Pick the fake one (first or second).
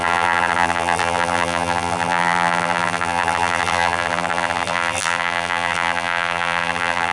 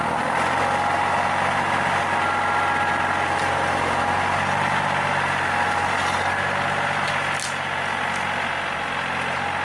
first